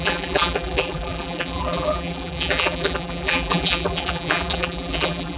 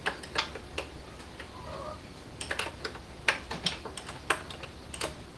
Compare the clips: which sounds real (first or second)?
second